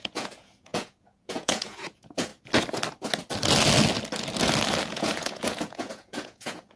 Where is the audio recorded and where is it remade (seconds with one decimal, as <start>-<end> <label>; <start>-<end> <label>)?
0.0-2.3 remade; 2.3-4.9 recorded; 4.9-6.8 remade